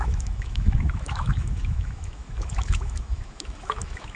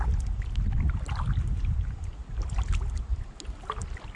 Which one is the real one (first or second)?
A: second